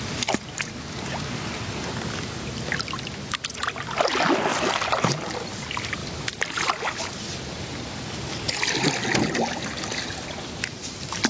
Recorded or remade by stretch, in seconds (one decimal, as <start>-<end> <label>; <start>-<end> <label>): 0.0-4.5 recorded; 4.5-5.2 remade; 5.2-11.3 recorded